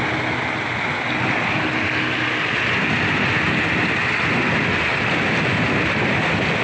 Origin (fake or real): real